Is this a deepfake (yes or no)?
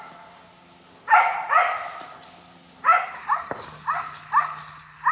no